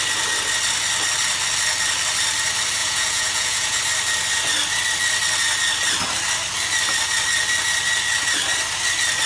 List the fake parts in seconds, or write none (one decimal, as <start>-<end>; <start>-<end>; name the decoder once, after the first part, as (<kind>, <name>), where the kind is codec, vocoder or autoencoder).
2.8-3.8 (vocoder, Vocos)